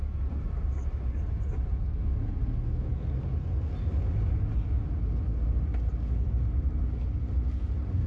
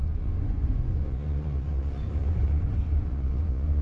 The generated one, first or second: second